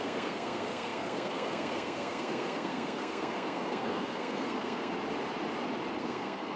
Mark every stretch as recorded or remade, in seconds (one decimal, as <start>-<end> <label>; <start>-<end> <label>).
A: 0.0-4.9 remade; 4.9-6.0 recorded; 6.0-6.6 remade